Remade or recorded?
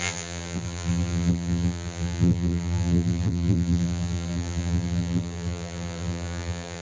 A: remade